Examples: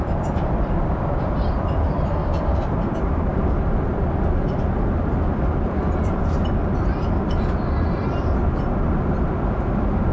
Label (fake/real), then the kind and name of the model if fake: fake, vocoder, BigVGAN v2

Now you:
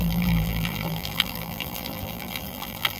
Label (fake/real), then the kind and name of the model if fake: fake, vocoder, BigVGAN v2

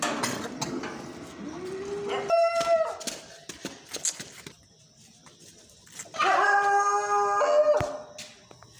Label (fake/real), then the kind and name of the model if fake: real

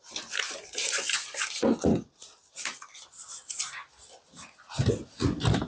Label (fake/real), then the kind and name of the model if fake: real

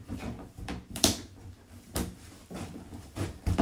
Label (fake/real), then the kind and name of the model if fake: fake, vocoder, BigVGAN v2